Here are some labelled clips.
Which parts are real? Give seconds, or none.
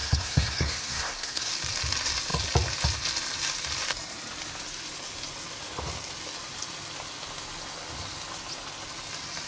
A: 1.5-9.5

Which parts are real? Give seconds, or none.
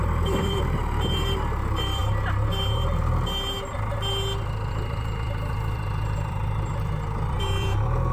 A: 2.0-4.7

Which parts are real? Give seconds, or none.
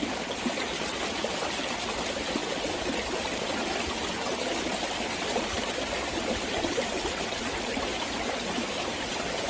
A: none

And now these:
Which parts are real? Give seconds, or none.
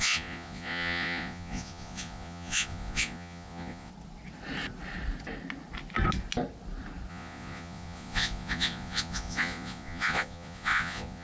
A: 3.9-7.1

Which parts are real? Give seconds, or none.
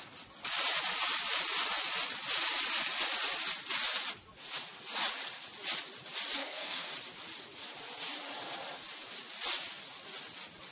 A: 0.0-6.4; 6.9-10.7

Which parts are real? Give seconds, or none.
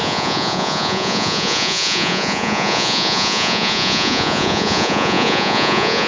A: none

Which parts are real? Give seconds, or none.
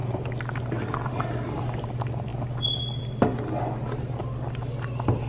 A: 0.0-5.3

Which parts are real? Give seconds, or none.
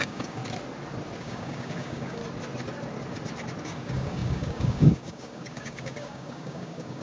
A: 0.4-1.2; 2.2-3.6